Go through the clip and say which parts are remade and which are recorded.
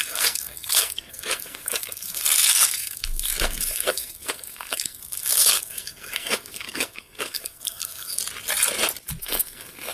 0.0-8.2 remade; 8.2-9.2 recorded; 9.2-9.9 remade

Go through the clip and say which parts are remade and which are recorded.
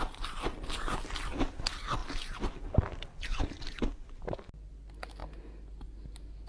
0.0-6.5 recorded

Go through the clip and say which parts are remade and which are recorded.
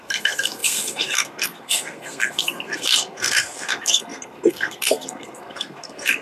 0.0-6.2 remade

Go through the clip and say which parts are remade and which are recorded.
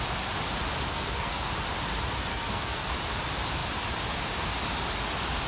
0.0-0.9 recorded; 0.9-1.5 remade; 1.5-2.3 recorded; 2.3-2.9 remade; 2.9-5.5 recorded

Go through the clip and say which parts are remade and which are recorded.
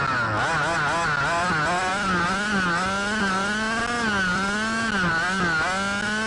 0.0-6.3 recorded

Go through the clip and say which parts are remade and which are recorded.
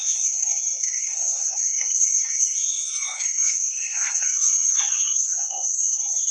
0.0-6.3 remade